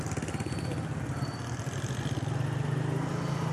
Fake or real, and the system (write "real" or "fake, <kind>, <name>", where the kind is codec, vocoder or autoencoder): real